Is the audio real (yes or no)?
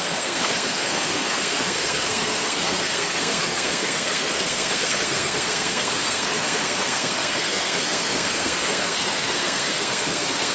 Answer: no